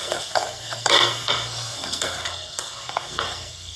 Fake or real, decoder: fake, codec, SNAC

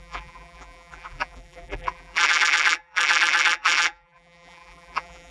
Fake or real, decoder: fake, vocoder, BigVGAN v2